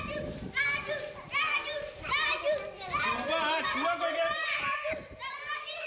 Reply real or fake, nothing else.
real